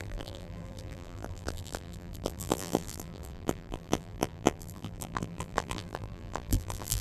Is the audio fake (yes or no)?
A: yes